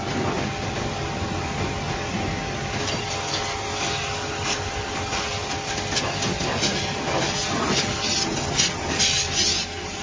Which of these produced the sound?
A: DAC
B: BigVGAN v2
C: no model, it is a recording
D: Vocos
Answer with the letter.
C